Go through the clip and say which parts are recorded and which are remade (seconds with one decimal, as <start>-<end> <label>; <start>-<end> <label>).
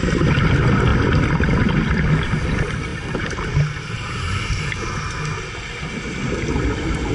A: 0.0-7.1 recorded